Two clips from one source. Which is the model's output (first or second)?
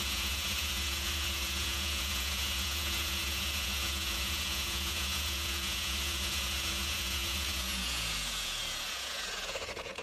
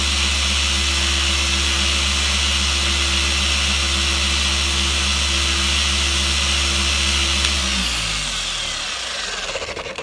first